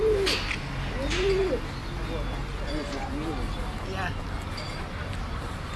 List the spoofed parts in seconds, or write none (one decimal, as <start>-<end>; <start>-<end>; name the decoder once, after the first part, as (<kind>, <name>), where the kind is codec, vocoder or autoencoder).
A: none